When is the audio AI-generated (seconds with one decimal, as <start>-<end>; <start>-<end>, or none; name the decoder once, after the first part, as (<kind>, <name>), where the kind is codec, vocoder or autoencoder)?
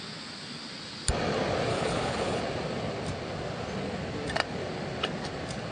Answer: 1.7-2.4 (codec, HILCodec)